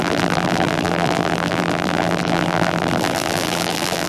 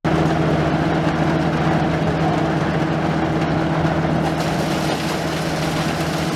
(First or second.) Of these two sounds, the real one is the second